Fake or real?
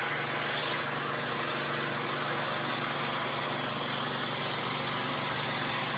real